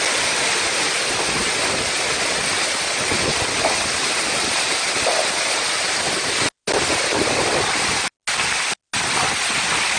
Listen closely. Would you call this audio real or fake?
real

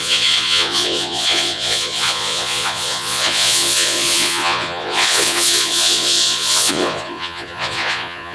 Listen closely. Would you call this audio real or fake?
fake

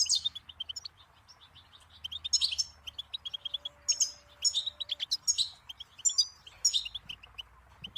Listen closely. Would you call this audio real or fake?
real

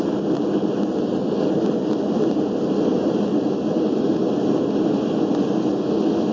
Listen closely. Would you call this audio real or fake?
real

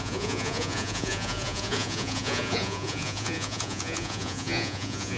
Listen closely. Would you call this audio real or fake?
fake